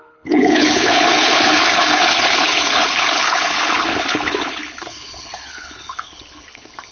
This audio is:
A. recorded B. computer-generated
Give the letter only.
B